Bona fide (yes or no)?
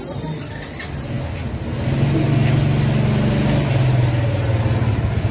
yes